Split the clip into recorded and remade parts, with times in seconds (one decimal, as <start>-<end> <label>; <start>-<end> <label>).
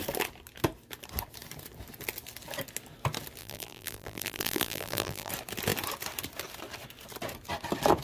0.0-3.4 recorded; 3.4-5.3 remade; 5.3-8.0 recorded